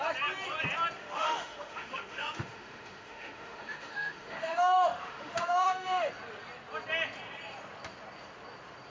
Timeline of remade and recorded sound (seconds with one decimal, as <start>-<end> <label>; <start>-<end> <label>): 0.0-1.0 recorded; 1.0-6.1 remade; 6.1-8.9 recorded